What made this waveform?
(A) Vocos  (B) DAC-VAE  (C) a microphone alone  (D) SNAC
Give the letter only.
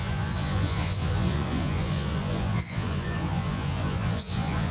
A